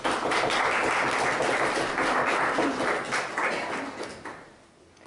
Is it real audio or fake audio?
real